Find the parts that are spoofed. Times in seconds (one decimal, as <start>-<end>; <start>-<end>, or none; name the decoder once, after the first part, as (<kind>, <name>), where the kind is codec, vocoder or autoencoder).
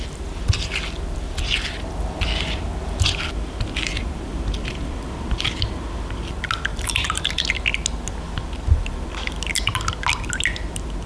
6.7-7.4 (vocoder, BigVGAN v2)